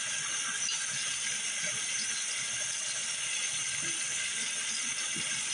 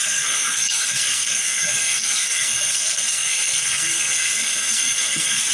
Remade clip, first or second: second